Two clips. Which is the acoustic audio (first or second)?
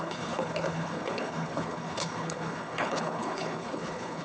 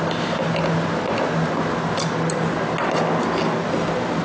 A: second